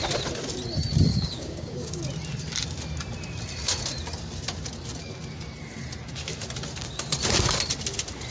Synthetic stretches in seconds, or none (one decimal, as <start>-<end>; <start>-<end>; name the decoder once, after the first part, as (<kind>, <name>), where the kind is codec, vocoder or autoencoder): 1.1-2.0 (codec, DAC)